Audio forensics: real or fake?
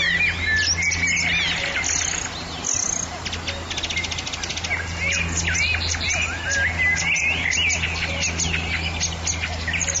real